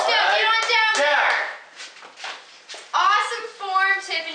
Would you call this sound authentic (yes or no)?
yes